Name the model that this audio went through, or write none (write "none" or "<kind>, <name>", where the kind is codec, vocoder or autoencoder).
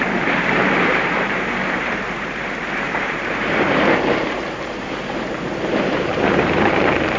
vocoder, BigVGAN v2